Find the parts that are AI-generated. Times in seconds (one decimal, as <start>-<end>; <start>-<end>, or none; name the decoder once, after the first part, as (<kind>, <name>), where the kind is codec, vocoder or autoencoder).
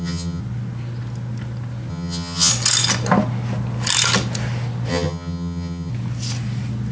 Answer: 0.0-0.4 (vocoder, HiFi-GAN); 1.9-2.5; 4.9-5.9